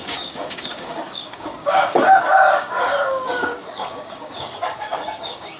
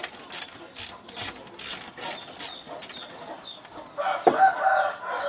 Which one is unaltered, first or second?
second